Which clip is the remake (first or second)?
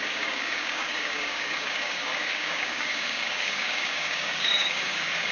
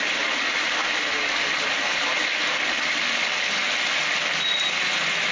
first